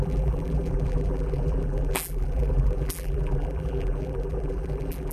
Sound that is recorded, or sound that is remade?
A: remade